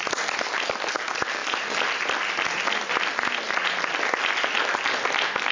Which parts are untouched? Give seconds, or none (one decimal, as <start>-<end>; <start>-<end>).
0.0-5.5